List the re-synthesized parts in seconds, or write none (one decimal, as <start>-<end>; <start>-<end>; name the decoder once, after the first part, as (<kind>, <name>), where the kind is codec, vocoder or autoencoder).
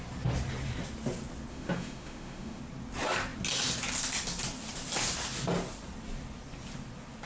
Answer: 1.5-2.6 (autoencoder, DAC-VAE)